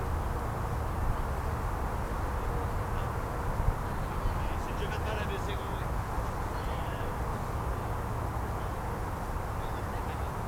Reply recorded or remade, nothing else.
recorded